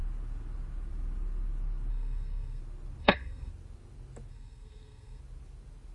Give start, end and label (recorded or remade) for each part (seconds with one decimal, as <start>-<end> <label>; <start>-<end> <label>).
0.0-1.9 recorded; 1.9-2.6 remade; 2.6-3.0 recorded; 3.0-3.5 remade; 3.5-4.3 recorded; 4.3-5.2 remade; 5.2-5.9 recorded